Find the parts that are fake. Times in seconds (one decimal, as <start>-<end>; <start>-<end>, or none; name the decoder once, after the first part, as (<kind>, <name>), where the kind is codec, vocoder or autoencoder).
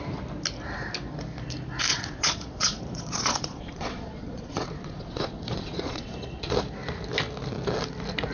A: 1.9-6.5 (vocoder, Vocos)